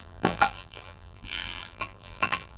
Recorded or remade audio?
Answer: remade